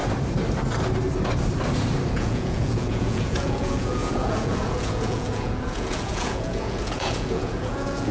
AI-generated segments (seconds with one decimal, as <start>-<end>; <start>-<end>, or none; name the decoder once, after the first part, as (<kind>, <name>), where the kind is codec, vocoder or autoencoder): 2.1-8.1 (vocoder, Vocos)